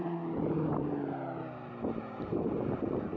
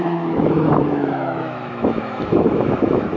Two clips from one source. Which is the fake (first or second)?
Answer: second